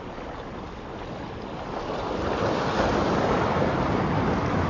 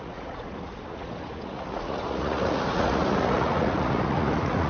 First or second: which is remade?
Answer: second